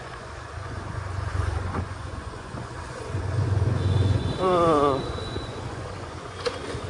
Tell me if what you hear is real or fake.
fake